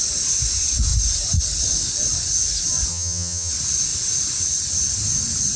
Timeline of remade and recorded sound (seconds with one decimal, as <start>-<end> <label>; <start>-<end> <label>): 0.0-2.9 recorded; 2.9-3.5 remade; 3.5-5.6 recorded